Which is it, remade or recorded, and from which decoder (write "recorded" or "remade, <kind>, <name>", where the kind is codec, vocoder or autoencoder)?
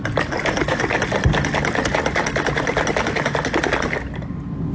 recorded